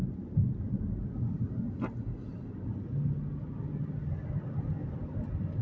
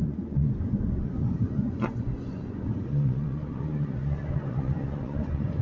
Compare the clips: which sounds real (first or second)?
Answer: first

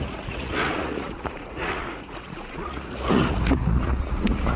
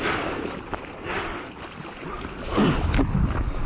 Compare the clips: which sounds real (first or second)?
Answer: second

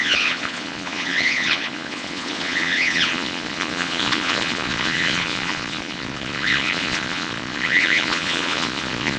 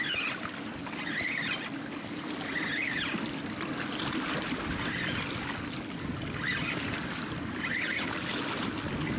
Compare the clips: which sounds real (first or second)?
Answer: second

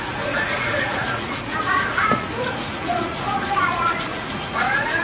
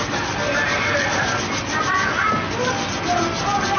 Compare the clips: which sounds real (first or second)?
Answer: second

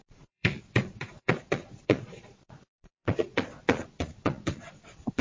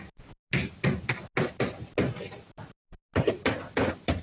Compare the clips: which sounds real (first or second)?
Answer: second